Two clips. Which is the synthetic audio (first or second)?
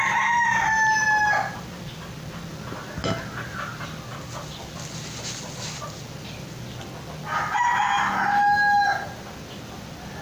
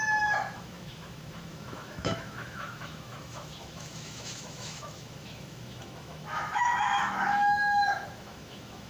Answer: second